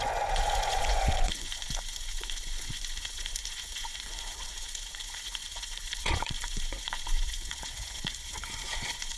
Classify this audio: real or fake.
fake